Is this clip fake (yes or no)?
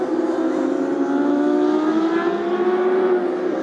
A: no